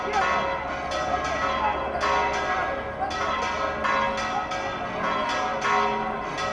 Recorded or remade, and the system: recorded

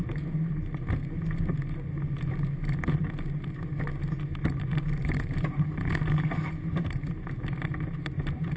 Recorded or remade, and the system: remade, vocoder, BigVGAN v2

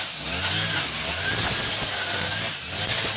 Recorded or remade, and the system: recorded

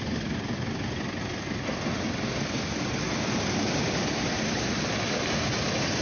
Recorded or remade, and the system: recorded